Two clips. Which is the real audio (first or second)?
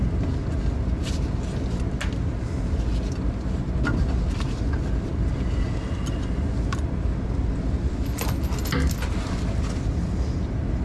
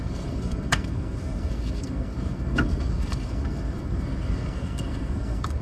first